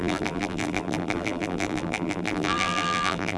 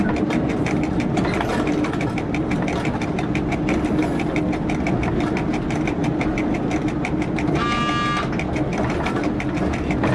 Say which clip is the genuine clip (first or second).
second